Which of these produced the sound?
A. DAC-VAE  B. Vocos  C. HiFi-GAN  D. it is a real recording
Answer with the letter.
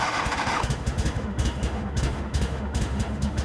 A